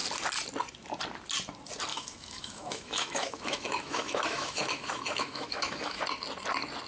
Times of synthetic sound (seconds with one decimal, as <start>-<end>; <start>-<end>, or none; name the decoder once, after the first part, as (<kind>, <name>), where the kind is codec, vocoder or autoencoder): 1.9-6.0 (autoencoder, DAC-VAE)